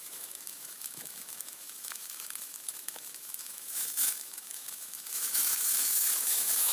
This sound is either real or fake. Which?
fake